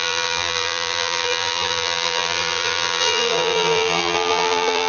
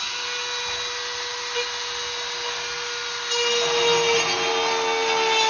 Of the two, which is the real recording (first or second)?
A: second